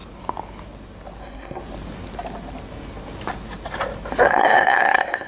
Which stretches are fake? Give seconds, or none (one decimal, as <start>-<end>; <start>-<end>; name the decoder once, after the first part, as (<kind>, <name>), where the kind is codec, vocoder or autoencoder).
1.2-1.6 (codec, SNAC); 4.2-5.3